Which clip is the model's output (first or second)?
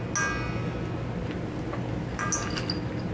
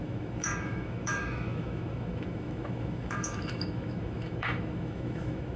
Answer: second